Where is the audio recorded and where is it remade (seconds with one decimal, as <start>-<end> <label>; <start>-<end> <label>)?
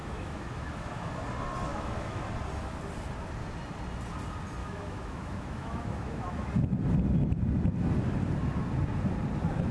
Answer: 0.0-1.1 remade; 1.1-1.7 recorded; 1.7-2.2 remade; 2.2-4.6 recorded; 4.6-6.5 remade; 6.5-9.7 recorded